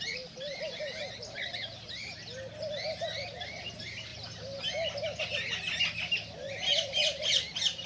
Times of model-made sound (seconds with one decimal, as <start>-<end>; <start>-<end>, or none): none

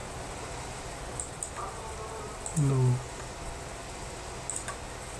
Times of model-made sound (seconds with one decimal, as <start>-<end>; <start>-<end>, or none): none

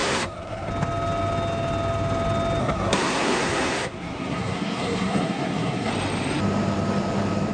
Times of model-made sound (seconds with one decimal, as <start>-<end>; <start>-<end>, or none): 0.0-0.7; 2.6-5.9